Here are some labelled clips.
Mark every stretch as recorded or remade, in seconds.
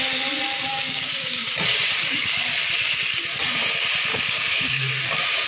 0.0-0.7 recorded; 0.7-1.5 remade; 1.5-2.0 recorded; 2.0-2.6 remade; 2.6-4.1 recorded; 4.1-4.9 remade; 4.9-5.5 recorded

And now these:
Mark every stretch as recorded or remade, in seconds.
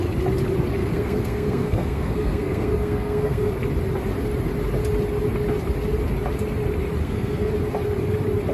0.0-0.8 recorded; 0.8-3.5 remade; 3.5-7.0 recorded; 7.0-7.5 remade; 7.5-8.5 recorded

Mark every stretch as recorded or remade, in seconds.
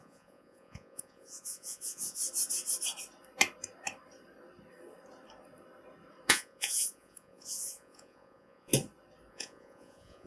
0.0-2.2 remade; 2.2-6.3 recorded; 6.3-8.7 remade; 8.7-9.3 recorded; 9.3-10.3 remade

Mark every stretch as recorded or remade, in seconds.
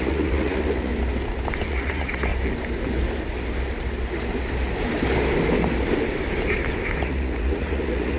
0.0-0.9 remade; 0.9-1.7 recorded; 1.7-2.3 remade; 2.3-7.0 recorded; 7.0-8.2 remade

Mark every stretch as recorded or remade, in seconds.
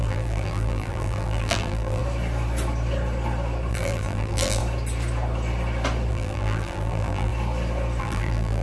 0.0-2.0 remade; 2.0-3.7 recorded; 3.7-4.6 remade; 4.6-6.1 recorded; 6.1-7.3 remade; 7.3-8.0 recorded; 8.0-8.6 remade